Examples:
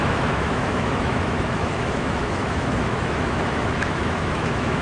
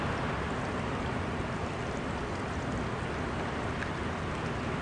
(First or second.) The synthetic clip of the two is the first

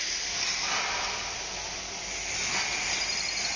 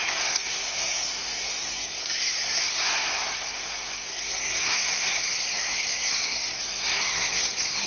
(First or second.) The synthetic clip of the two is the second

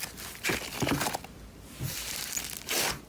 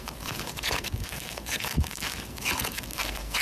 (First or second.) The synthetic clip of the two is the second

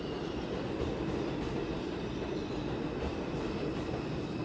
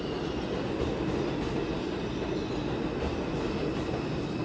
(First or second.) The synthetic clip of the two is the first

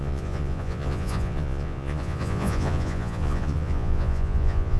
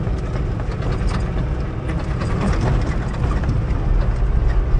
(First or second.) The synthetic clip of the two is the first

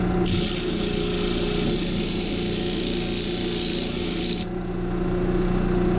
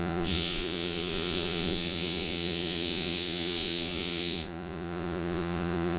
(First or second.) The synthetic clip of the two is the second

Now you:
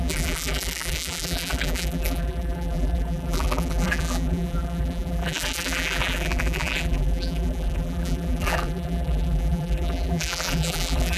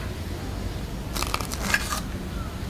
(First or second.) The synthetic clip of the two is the first